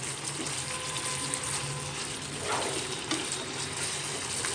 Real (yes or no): yes